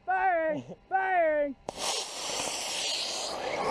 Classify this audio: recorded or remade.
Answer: recorded